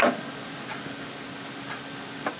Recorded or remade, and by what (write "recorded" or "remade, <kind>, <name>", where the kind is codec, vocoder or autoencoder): recorded